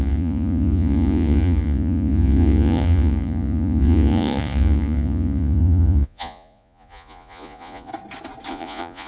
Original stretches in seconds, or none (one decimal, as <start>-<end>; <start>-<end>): 7.9-8.5